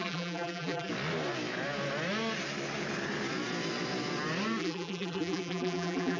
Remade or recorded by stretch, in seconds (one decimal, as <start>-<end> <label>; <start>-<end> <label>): 0.0-0.9 remade; 0.9-4.6 recorded; 4.6-6.2 remade